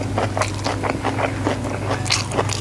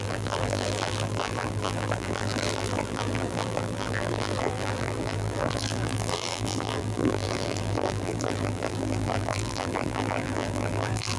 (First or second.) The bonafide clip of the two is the first